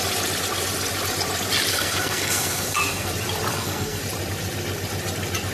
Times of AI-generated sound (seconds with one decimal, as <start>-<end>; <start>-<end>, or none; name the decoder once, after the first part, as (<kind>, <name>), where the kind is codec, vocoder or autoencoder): 1.7-3.1 (codec, SNAC); 3.5-4.0